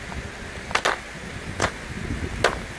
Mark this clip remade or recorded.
recorded